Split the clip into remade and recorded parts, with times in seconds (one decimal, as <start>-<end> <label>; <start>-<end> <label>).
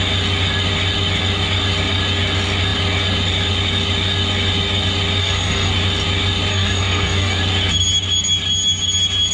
0.0-5.2 recorded; 5.2-5.7 remade; 5.7-6.5 recorded; 6.5-7.4 remade; 7.4-9.3 recorded